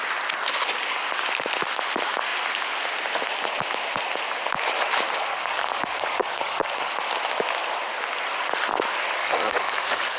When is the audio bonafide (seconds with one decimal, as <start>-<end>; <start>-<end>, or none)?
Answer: 0.0-5.3; 6.9-9.2